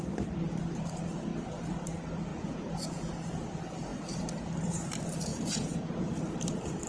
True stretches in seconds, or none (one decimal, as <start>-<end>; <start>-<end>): 0.0-2.3; 3.1-5.3; 6.2-6.9